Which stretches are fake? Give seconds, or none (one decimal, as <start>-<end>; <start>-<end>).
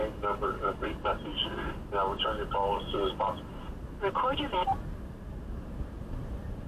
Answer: 0.6-1.3; 3.9-6.7